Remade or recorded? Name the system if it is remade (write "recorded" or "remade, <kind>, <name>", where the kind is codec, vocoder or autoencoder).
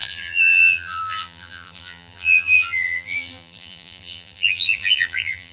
remade, vocoder, BigVGAN v2